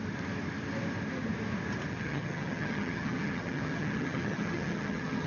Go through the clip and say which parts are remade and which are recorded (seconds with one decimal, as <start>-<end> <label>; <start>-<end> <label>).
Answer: 0.0-1.9 recorded; 1.9-5.3 remade